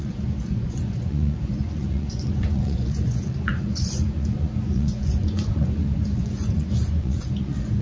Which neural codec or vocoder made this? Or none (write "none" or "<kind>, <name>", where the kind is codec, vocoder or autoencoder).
vocoder, Vocos